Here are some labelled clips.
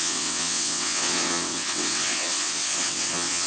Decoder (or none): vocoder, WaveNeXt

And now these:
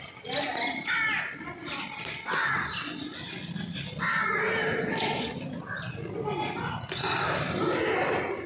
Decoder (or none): none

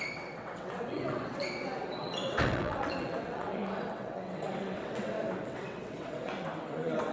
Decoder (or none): vocoder, WaveNeXt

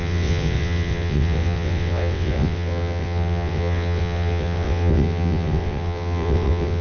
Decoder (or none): vocoder, WaveNeXt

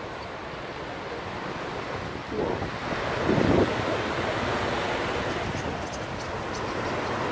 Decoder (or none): none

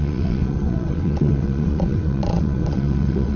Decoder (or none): vocoder, WaveNeXt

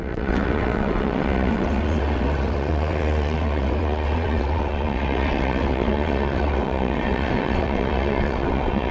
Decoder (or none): vocoder, WaveNeXt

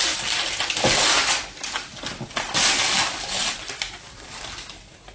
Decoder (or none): none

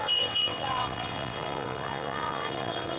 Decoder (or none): vocoder, WaveNeXt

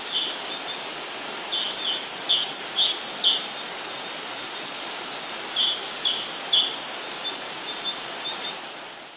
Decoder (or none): none